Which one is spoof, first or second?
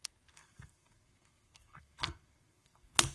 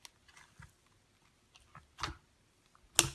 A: first